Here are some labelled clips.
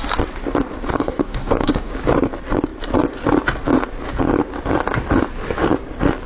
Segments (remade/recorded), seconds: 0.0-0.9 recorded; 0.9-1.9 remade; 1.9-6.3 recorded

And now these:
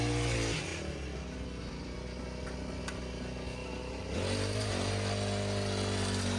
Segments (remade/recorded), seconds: 0.0-6.4 recorded

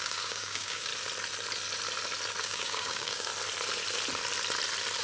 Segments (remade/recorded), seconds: 0.0-0.9 remade; 0.9-2.4 recorded; 2.4-3.3 remade; 3.3-5.0 recorded

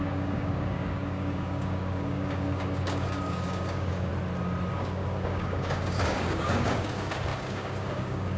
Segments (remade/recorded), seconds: 0.0-4.1 remade; 4.1-4.7 recorded; 4.7-8.4 remade

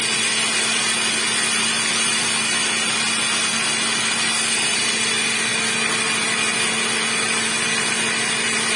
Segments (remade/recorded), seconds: 0.0-8.8 recorded

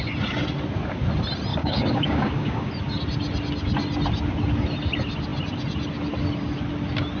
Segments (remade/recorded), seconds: 0.0-1.5 recorded; 1.5-2.7 remade; 2.7-7.2 recorded

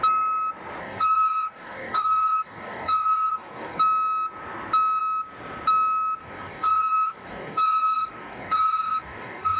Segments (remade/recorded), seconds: 0.0-0.8 recorded; 0.8-3.8 remade; 3.8-6.2 recorded; 6.2-9.6 remade

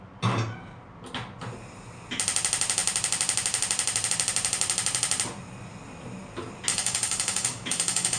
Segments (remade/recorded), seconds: 0.0-6.7 recorded; 6.7-8.2 remade